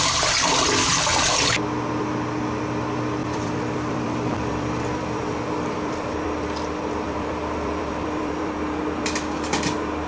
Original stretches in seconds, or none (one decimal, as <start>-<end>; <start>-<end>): 0.0-3.2; 8.5-10.1